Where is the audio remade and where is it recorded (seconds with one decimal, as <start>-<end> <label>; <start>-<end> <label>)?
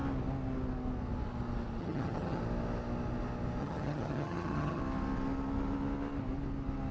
0.0-1.8 recorded; 1.8-2.4 remade; 2.4-3.6 recorded; 3.6-4.8 remade; 4.8-6.9 recorded